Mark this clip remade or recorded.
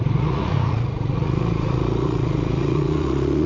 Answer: remade